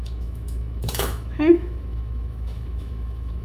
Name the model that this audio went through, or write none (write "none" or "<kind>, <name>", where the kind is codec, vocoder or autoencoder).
autoencoder, DAC-VAE